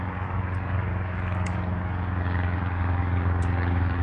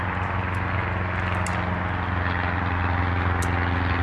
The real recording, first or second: second